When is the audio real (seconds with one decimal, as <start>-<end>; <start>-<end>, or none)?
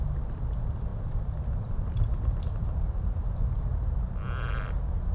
0.0-0.9; 4.0-5.1